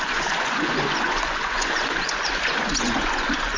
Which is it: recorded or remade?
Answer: remade